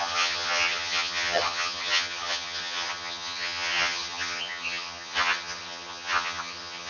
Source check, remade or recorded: remade